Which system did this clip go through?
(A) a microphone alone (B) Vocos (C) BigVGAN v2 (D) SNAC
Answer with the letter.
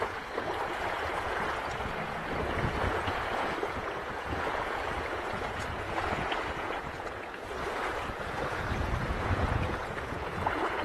B